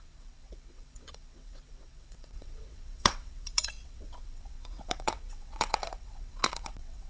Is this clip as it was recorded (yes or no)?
no